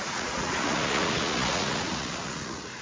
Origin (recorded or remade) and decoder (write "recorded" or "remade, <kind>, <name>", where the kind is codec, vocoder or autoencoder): remade, vocoder, Vocos